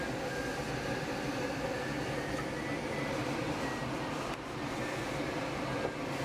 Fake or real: real